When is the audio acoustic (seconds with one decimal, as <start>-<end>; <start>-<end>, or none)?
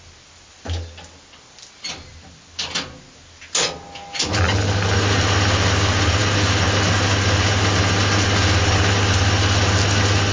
0.0-10.3